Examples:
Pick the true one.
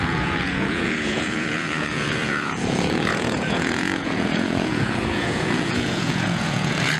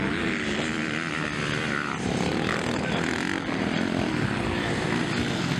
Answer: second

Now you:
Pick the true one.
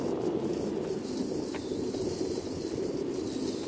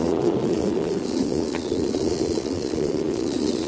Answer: first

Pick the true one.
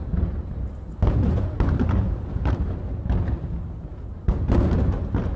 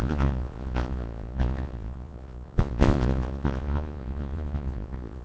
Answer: first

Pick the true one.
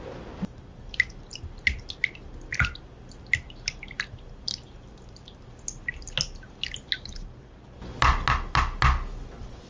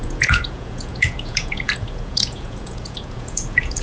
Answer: first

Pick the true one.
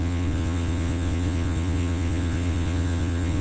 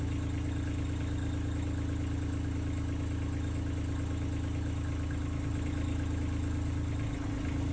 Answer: second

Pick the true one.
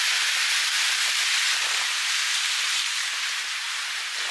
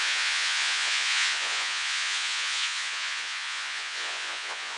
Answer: first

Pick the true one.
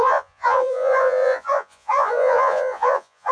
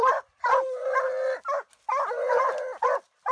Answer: second